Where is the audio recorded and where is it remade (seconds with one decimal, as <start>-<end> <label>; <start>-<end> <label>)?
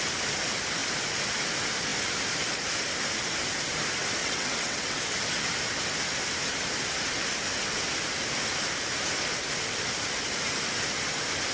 0.0-4.2 recorded; 4.2-5.0 remade; 5.0-11.5 recorded